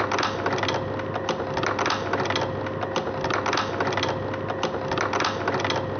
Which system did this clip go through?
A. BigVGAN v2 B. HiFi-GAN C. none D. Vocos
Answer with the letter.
C